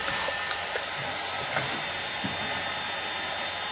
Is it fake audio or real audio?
real